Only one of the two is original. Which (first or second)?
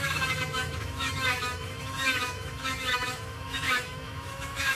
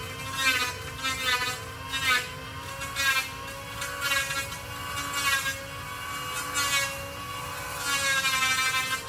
second